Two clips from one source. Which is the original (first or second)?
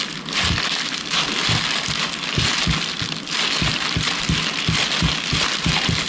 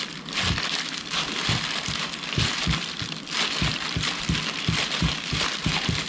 first